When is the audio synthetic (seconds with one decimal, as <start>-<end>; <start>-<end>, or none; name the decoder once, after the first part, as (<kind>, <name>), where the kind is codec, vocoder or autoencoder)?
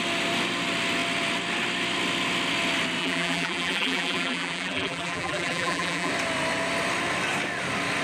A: 3.0-6.1 (vocoder, BigVGAN v2)